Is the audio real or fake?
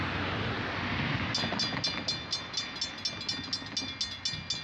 real